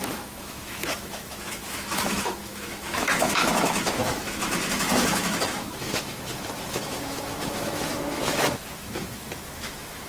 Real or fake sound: fake